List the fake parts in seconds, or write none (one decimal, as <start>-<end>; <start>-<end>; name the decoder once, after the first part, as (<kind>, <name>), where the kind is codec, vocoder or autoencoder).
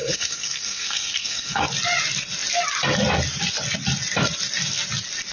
0.0-1.6 (codec, SNAC)